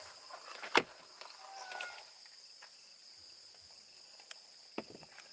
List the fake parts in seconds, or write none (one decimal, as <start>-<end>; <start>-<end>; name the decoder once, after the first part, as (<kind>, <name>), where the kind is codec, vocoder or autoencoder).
none